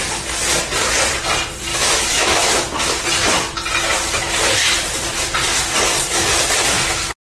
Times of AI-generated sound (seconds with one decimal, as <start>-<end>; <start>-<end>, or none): 1.7-3.0